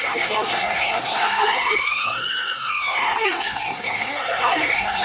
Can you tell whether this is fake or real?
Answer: fake